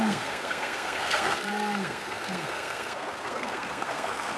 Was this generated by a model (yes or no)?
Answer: yes